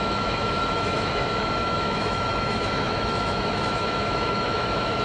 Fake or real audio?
fake